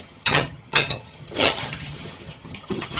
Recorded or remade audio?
remade